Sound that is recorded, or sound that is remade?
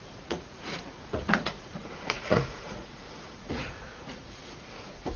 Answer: remade